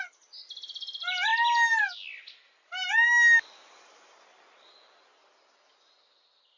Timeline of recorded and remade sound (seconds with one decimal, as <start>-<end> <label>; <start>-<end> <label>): 0.0-6.6 recorded